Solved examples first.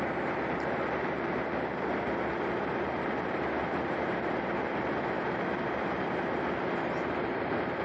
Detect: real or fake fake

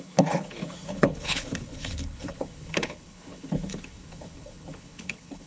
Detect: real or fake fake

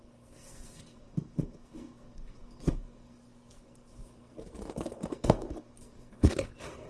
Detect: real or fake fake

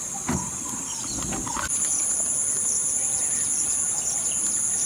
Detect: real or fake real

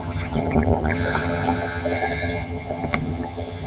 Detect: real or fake fake